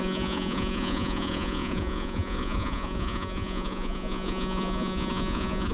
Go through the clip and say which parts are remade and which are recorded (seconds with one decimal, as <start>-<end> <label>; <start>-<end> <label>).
0.0-5.7 remade